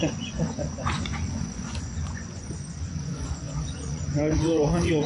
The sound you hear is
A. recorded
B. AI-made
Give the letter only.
B